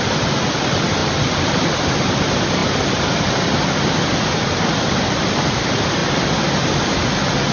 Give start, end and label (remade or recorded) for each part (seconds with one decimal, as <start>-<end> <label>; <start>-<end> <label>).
0.0-1.0 recorded; 1.0-1.9 remade; 1.9-6.0 recorded; 6.0-6.5 remade; 6.5-7.5 recorded